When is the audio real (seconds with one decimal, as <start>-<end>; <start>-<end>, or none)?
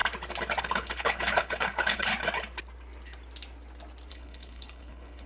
0.0-0.6; 2.1-4.1